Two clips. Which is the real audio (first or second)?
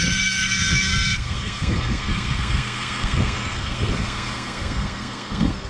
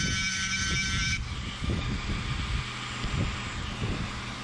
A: second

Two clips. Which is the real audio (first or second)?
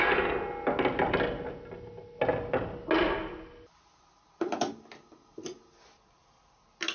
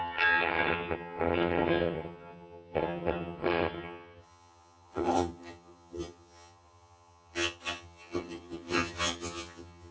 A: first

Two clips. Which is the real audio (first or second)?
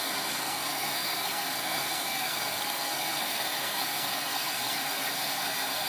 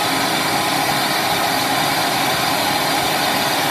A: second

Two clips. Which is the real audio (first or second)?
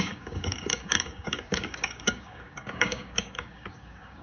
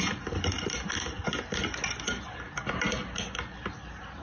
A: second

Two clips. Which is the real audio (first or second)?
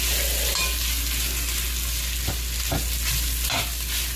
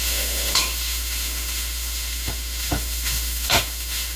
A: first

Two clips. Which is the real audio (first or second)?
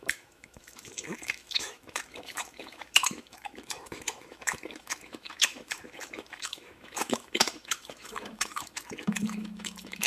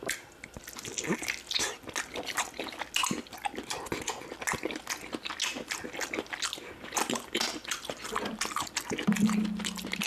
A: second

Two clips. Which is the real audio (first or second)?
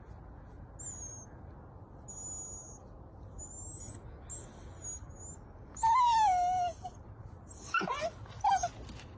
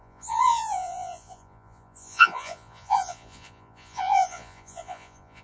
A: first